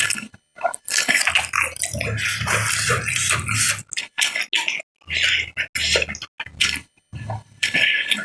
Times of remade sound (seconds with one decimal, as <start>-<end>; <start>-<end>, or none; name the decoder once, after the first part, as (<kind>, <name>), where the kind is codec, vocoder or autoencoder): 0.0-1.2 (codec, HILCodec); 4.0-4.4; 6.6-8.2